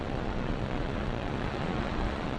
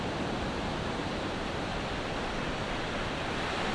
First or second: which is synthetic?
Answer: first